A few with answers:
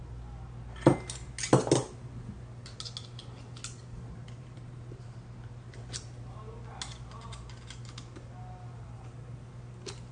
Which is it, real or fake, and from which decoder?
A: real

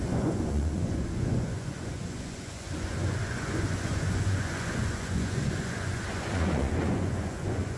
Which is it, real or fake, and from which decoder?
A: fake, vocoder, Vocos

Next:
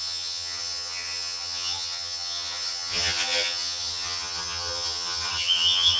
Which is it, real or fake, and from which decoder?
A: fake, vocoder, HiFi-GAN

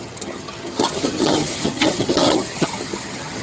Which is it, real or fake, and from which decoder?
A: fake, vocoder, HiFi-GAN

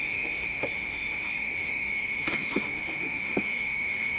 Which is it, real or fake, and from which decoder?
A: fake, autoencoder, DAC-VAE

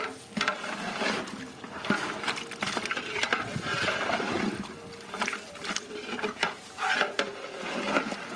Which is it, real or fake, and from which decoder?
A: real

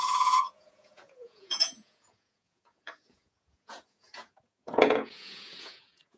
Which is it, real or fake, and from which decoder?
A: fake, vocoder, Vocos